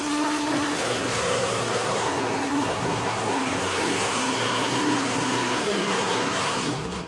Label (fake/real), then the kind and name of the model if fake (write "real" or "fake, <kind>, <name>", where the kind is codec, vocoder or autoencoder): fake, codec, SNAC